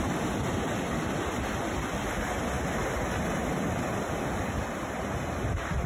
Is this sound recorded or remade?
recorded